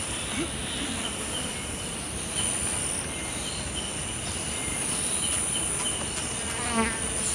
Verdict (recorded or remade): recorded